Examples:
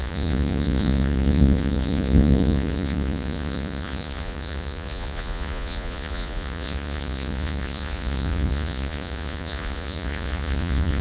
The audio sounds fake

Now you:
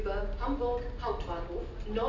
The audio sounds real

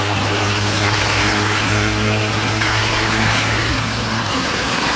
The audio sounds fake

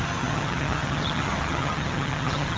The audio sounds fake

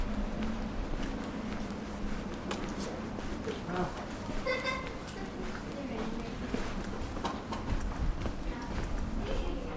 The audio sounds real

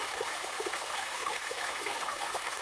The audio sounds fake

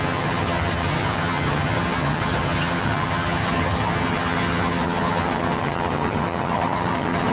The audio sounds fake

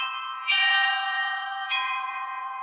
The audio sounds fake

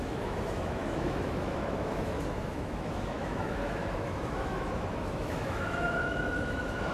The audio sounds fake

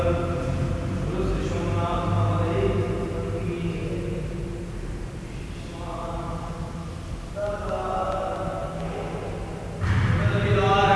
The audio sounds real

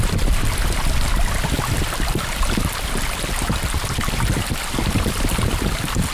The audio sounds fake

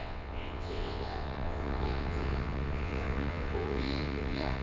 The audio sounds fake